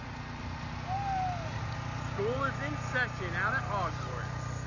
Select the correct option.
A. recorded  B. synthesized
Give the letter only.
A